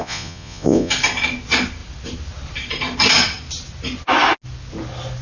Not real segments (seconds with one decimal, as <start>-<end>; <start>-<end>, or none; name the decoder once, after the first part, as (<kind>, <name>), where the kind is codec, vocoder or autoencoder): 0.0-0.9 (vocoder, Vocos)